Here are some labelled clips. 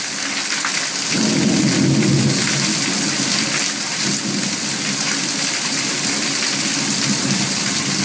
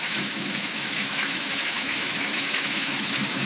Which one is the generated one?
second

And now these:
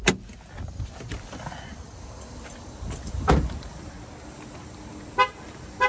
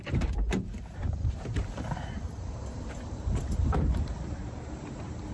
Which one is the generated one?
second